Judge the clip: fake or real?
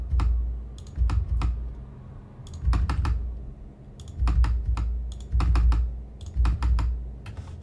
real